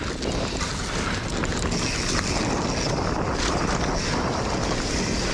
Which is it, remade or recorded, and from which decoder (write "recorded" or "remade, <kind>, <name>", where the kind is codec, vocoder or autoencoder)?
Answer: recorded